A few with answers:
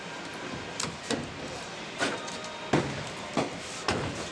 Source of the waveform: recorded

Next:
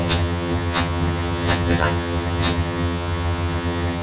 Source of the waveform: remade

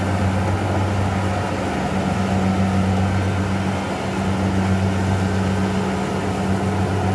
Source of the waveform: recorded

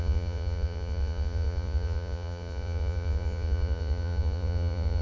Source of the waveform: remade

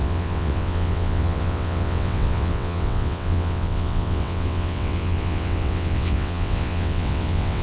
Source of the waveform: remade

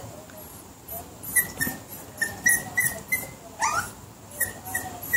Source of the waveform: recorded